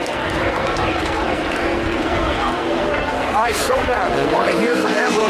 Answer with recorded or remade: remade